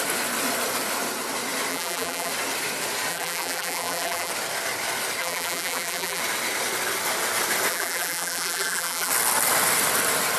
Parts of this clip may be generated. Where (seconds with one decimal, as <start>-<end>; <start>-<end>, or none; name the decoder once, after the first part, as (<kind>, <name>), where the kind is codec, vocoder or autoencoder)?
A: 1.7-2.3 (vocoder, BigVGAN v2); 3.1-4.3; 5.2-6.2; 7.7-9.1